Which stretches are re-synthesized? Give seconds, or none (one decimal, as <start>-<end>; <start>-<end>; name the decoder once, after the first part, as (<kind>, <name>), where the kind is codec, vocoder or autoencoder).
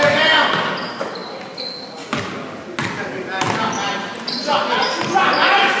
none